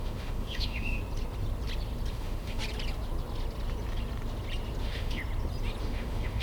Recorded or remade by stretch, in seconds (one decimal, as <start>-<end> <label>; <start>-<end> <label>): 0.0-1.0 remade; 1.0-2.1 recorded; 2.1-2.6 remade; 2.6-4.8 recorded; 4.8-5.2 remade; 5.2-5.8 recorded; 5.8-6.4 remade